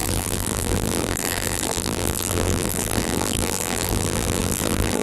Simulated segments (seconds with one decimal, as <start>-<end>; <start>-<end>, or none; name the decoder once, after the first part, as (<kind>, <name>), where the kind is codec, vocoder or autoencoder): 0.0-5.0 (vocoder, BigVGAN v2)

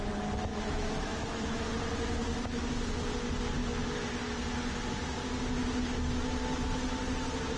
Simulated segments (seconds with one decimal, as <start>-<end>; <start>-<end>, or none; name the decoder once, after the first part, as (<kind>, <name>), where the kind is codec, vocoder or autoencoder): 0.5-1.6 (autoencoder, DAC-VAE)

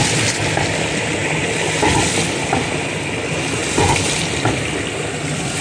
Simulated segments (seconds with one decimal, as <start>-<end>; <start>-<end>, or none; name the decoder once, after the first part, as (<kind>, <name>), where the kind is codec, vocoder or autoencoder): none

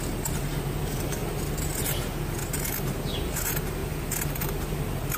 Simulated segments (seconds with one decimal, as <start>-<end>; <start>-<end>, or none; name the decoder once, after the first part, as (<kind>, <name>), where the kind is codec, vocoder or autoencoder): none

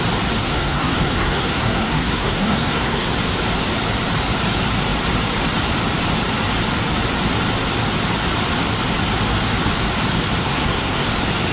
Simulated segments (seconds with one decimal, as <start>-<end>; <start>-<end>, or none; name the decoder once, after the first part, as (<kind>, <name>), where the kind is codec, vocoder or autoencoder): 0.4-3.1 (codec, SNAC); 10.4-11.1

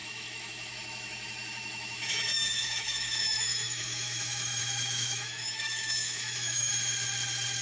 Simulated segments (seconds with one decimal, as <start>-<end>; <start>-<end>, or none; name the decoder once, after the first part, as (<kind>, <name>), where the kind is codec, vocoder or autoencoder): 0.0-6.7 (autoencoder, DAC-VAE)

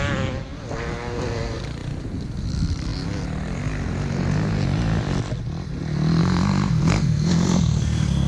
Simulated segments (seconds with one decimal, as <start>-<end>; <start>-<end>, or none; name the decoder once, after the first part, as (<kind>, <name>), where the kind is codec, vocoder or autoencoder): 6.2-8.3 (codec, SNAC)

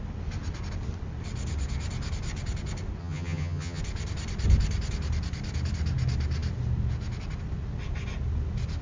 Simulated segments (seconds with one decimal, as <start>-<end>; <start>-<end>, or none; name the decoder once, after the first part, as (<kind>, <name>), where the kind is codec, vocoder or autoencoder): 3.0-3.8 (vocoder, HiFi-GAN)